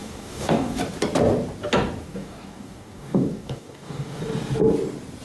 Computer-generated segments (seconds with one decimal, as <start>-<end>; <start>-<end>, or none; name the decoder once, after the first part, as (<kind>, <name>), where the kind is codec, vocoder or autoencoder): 0.0-0.8 (codec, DAC); 2.0-4.2